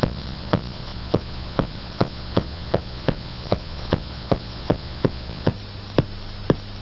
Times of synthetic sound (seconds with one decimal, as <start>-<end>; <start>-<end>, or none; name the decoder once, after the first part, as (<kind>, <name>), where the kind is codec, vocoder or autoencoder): 0.0-5.5 (vocoder, Vocos)